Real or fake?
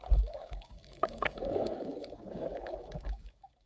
fake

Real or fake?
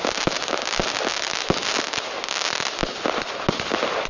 real